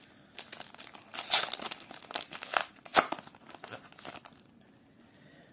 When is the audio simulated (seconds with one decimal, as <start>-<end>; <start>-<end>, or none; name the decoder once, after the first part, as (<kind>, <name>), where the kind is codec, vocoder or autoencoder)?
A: none

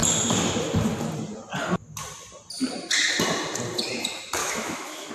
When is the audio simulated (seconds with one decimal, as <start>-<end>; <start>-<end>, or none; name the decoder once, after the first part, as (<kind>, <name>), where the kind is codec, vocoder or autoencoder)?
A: 4.4-5.1 (autoencoder, DAC-VAE)

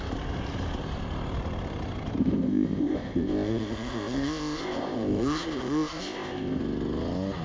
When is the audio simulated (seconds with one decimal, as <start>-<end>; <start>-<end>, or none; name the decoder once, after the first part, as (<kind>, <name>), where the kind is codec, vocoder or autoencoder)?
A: 2.2-6.6 (codec, ZipCodec)

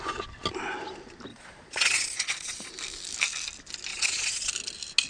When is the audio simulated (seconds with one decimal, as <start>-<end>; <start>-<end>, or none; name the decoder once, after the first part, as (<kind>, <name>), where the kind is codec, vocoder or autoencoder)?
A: 1.3-2.7 (vocoder, Vocos); 3.9-4.5

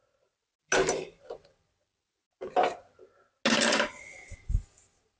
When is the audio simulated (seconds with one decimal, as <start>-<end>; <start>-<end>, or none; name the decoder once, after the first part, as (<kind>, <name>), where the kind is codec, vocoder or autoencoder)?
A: none

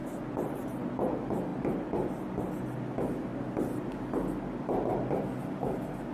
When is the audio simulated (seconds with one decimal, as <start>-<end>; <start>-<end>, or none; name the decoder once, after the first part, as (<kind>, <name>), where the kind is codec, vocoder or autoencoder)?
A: none